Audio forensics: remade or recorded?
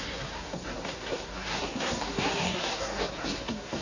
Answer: remade